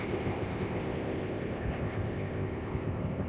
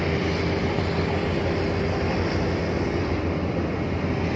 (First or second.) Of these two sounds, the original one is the second